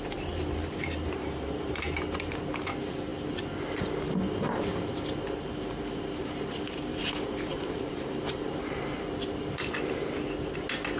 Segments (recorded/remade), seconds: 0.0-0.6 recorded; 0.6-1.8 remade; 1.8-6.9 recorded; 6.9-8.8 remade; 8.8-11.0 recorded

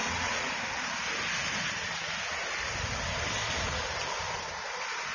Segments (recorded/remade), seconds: 0.0-0.5 remade; 0.5-5.1 recorded

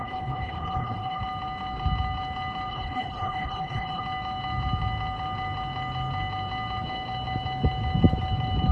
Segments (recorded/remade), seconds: 0.0-1.2 remade; 1.2-2.7 recorded; 2.7-4.0 remade; 4.0-8.7 recorded